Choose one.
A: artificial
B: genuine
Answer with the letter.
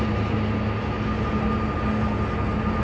B